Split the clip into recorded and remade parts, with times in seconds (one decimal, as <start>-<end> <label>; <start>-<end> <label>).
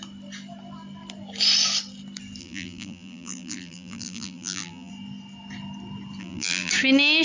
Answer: 0.0-2.4 recorded; 2.4-4.9 remade; 4.9-6.2 recorded; 6.2-6.7 remade; 6.7-7.2 recorded